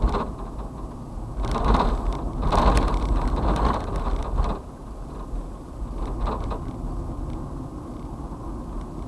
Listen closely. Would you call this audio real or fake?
real